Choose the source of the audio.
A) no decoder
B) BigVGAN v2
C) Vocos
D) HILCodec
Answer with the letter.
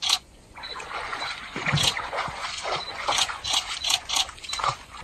C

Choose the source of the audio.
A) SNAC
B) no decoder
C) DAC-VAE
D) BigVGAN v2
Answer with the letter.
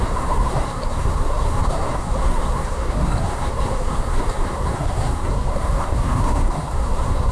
A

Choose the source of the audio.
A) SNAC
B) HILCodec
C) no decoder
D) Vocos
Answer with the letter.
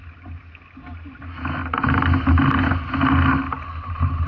C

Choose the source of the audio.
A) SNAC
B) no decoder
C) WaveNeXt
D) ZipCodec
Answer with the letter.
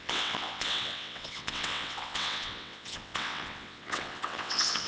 C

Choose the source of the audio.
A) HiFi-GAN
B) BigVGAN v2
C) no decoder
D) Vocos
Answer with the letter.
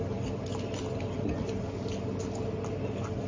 C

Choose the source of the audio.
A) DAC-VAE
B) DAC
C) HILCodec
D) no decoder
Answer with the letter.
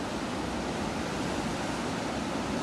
D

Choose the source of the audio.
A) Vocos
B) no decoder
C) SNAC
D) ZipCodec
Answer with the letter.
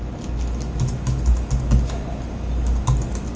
B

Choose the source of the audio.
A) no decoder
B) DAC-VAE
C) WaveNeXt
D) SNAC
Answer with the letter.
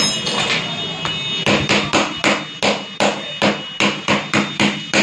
A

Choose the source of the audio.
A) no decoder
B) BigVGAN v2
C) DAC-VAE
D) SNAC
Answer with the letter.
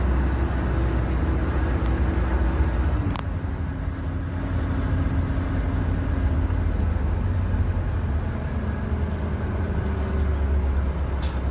A